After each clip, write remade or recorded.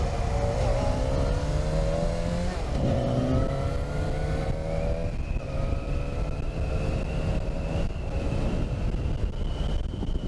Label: recorded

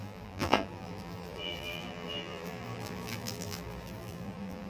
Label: remade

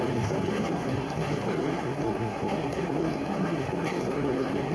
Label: remade